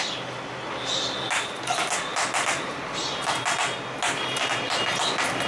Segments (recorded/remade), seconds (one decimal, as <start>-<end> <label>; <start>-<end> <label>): 0.0-5.5 recorded